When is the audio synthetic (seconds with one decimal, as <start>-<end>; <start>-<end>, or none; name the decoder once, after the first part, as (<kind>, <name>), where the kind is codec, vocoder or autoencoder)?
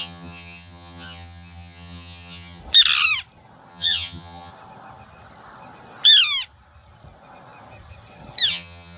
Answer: 0.0-2.6 (vocoder, HiFi-GAN); 3.7-4.5; 8.5-9.0